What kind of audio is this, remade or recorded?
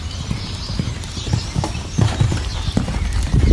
remade